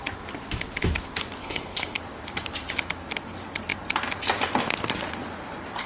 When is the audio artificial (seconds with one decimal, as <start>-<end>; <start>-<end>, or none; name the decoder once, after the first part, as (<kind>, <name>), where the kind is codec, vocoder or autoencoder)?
1.4-2.0 (codec, HILCodec)